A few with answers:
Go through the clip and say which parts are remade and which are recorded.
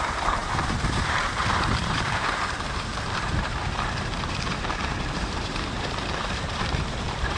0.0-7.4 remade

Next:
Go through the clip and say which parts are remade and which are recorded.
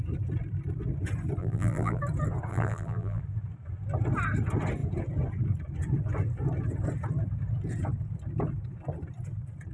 0.0-1.4 recorded; 1.4-2.0 remade; 2.0-2.5 recorded; 2.5-3.2 remade; 3.2-9.7 recorded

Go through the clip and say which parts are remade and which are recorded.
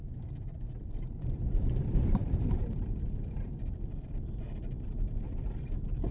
0.0-6.1 remade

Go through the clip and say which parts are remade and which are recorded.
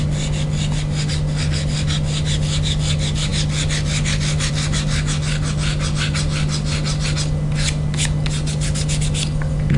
0.0-9.8 recorded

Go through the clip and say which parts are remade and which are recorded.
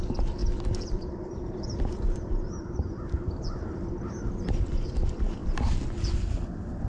0.0-6.9 recorded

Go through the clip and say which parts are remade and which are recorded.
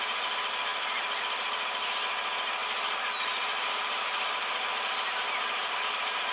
0.0-2.6 recorded; 2.6-4.2 remade; 4.2-5.6 recorded; 5.6-6.3 remade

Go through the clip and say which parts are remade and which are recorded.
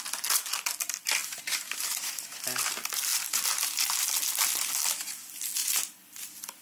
0.0-3.1 recorded; 3.1-3.9 remade; 3.9-5.6 recorded; 5.6-6.6 remade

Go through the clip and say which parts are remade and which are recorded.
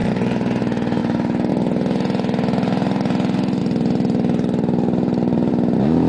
0.0-0.6 remade; 0.6-3.6 recorded; 3.6-5.5 remade; 5.5-6.1 recorded